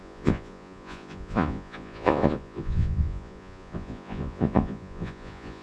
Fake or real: fake